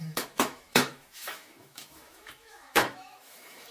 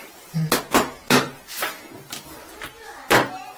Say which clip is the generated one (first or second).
first